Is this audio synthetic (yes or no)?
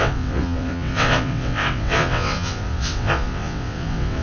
yes